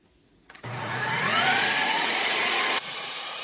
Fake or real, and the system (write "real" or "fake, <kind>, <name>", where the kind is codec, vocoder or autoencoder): fake, vocoder, Vocos